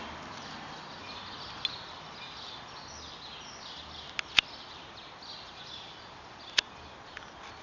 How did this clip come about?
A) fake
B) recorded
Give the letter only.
B